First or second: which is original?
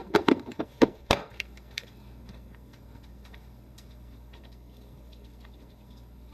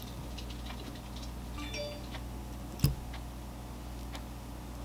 second